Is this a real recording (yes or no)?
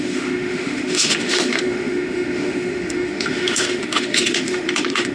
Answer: no